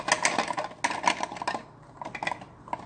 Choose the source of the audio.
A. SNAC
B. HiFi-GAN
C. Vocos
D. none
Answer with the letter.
D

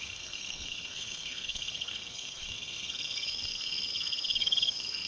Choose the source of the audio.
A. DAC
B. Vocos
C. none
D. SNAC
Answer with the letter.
D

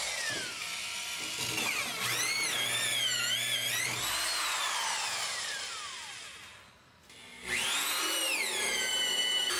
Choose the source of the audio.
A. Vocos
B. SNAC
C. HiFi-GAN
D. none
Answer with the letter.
D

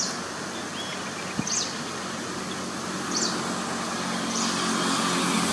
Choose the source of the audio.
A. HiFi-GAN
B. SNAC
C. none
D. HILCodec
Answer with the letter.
C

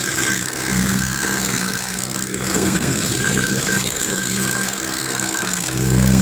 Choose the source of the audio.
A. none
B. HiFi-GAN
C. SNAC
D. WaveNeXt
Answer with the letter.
C